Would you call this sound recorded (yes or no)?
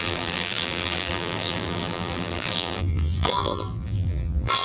no